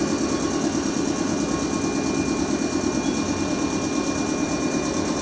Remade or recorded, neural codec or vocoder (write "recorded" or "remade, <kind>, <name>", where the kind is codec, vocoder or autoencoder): recorded